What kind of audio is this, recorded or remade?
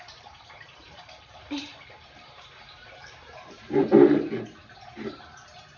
remade